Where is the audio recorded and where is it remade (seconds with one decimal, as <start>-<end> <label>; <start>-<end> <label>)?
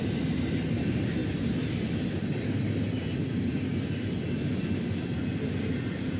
0.0-6.2 recorded